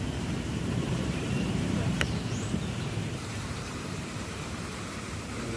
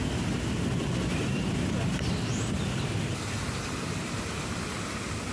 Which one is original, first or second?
second